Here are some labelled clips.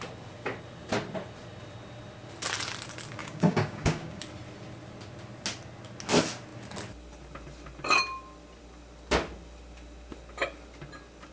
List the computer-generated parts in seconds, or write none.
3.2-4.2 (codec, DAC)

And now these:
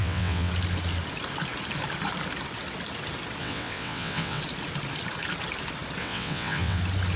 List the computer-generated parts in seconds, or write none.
0.0-0.5 (vocoder, WaveNeXt); 3.4-4.4; 6.0-6.8

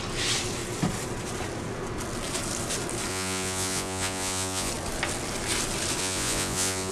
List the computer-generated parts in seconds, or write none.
3.1-4.7 (vocoder, Vocos); 6.0-6.9

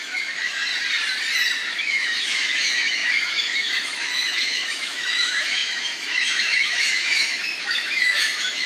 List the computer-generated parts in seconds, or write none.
0.0-0.7 (autoencoder, DAC-VAE); 1.7-8.7

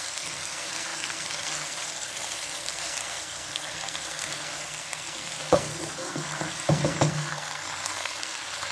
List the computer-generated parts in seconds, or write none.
0.0-8.7 (codec, SNAC)

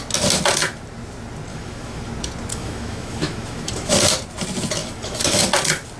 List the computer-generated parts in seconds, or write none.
1.5-2.1 (autoencoder, DAC-VAE); 2.5-3.9; 4.8-5.4